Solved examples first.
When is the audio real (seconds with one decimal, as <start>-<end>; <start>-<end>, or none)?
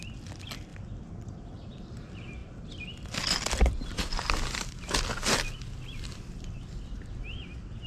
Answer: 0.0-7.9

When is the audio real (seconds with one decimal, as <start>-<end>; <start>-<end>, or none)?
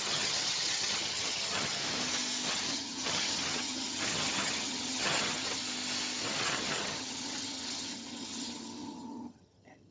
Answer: 1.8-2.5; 5.6-6.2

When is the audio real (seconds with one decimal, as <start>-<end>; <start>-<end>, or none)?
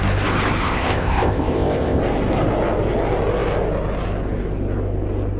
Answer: 0.0-0.6; 2.0-5.4